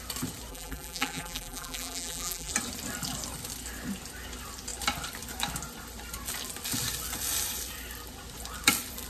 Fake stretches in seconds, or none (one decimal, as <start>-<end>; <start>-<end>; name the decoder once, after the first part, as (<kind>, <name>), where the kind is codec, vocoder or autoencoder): 0.5-2.5 (vocoder, BigVGAN v2)